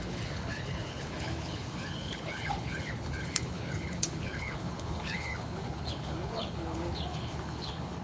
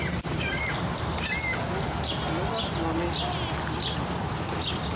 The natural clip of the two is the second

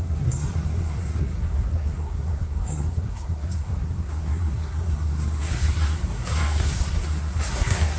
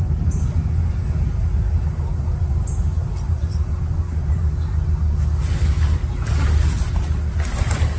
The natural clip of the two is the second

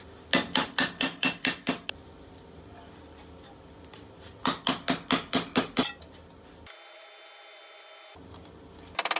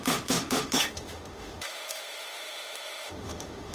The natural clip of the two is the first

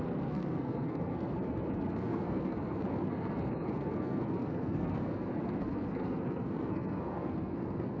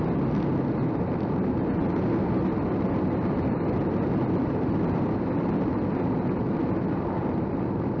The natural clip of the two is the second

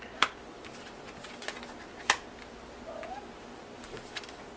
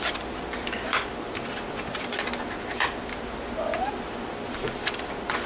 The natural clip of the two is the first